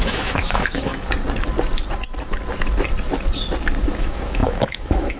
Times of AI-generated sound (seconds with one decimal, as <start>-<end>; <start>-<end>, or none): 0.0-0.9; 4.0-5.2